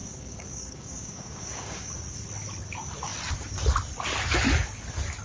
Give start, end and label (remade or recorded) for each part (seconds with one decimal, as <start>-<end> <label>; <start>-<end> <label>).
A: 0.0-1.9 remade; 1.9-5.2 recorded